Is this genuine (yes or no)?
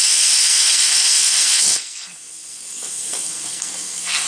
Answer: no